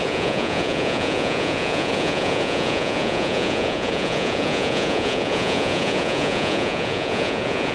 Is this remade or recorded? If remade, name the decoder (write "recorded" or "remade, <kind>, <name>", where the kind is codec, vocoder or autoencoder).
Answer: remade, vocoder, Vocos